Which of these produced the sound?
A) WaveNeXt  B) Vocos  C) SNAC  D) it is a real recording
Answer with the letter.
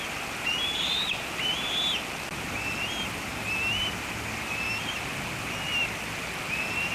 D